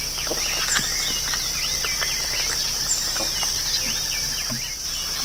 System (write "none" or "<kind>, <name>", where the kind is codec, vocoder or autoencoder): none